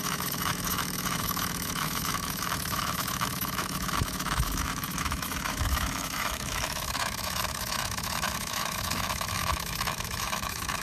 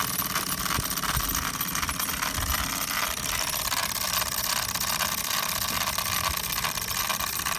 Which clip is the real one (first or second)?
second